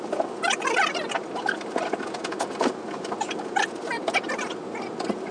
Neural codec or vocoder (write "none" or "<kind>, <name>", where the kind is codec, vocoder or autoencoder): none